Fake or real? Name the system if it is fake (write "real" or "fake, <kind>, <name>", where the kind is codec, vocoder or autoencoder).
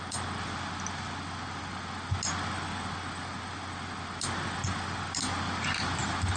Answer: real